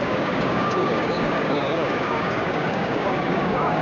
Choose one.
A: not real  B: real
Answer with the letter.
A